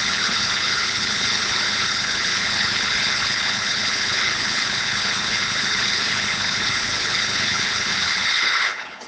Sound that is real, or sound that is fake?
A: fake